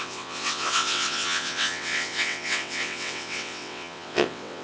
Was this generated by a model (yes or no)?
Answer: yes